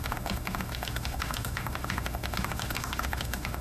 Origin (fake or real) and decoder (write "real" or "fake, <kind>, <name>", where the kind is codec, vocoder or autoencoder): fake, autoencoder, DAC-VAE